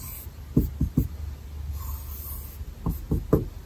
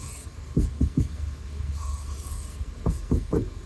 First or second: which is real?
first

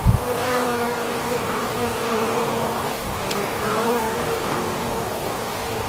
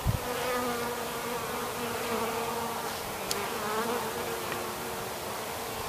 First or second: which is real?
second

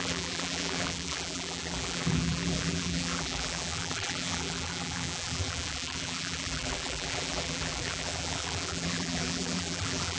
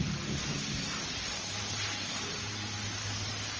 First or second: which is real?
second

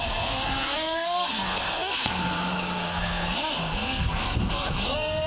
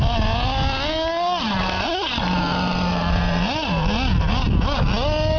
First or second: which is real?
second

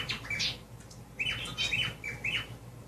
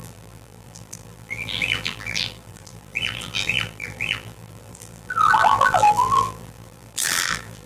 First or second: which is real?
first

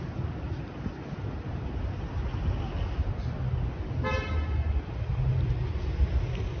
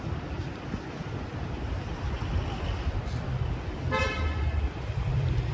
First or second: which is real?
first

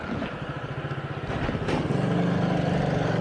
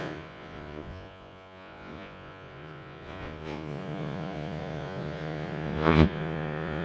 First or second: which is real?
first